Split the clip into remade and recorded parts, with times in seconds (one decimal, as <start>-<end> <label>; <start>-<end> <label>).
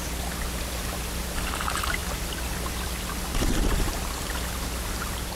0.0-5.4 recorded